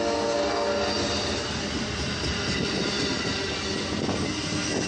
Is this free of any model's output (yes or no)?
yes